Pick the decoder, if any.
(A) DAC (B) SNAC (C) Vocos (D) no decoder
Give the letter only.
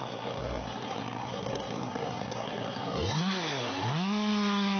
B